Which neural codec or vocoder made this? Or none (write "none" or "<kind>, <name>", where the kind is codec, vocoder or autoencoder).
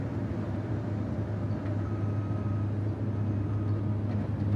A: none